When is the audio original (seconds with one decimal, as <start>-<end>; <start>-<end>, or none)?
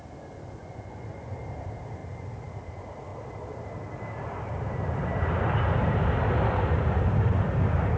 0.0-0.6; 1.4-8.0